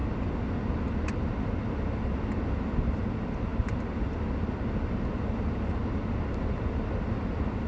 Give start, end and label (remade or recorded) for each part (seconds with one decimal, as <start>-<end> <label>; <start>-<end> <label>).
0.0-7.7 recorded